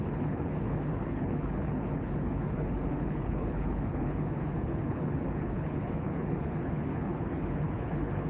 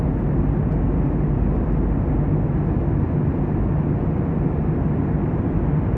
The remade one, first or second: first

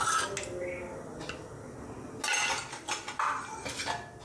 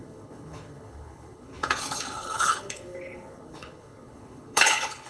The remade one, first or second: second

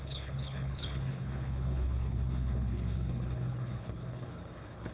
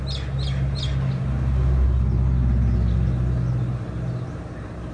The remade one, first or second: first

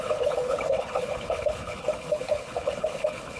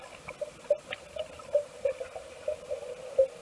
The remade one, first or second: first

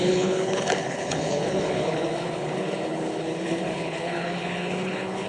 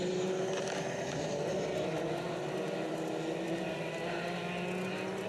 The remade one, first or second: first